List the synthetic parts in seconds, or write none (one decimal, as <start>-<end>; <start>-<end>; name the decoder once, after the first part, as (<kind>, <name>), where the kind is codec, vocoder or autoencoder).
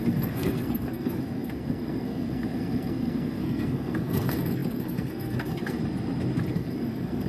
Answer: 0.0-5.8 (codec, SNAC); 6.5-7.3